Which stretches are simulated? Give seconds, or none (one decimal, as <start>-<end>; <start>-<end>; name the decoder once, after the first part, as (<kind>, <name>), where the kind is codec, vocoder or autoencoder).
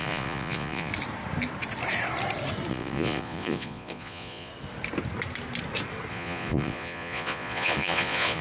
0.0-0.9 (vocoder, Vocos); 2.7-4.5; 6.1-8.4